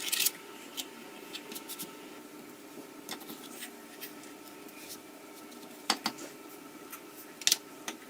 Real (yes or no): yes